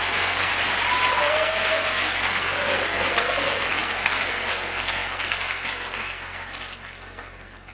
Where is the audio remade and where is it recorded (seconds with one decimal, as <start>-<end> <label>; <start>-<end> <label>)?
0.0-0.5 remade; 0.5-1.2 recorded; 1.2-7.7 remade